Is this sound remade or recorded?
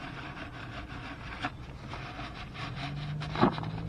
recorded